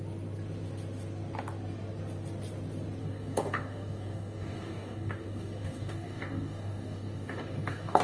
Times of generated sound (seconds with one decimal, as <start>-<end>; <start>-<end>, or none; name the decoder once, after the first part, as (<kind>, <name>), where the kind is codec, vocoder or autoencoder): 3.0-8.0 (codec, DAC)